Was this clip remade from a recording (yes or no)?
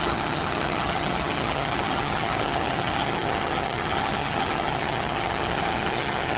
yes